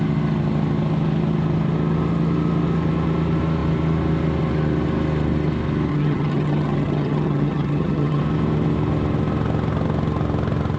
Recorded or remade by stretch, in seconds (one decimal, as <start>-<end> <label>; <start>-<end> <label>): 0.0-5.9 recorded; 5.9-8.2 remade; 8.2-10.8 recorded